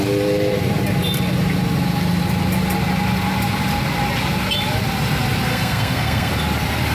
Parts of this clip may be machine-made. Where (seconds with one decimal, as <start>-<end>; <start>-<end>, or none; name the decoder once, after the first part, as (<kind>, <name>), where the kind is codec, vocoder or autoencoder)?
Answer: 5.5-6.3 (codec, SNAC)